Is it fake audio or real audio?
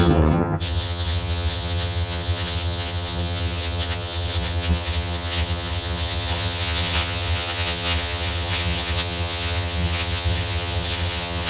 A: fake